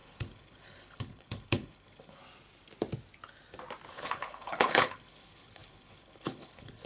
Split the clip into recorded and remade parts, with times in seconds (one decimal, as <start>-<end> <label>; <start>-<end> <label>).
0.0-2.2 remade; 2.2-3.9 recorded; 3.9-6.8 remade